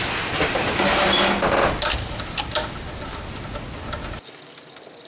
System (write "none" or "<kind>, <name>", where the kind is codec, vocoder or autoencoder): none